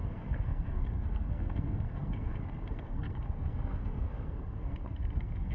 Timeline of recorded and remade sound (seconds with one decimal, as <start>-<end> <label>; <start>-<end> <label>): 0.0-5.5 remade